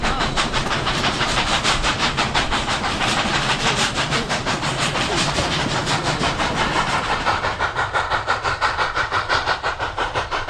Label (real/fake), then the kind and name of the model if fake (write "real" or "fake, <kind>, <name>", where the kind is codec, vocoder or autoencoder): fake, vocoder, BigVGAN v2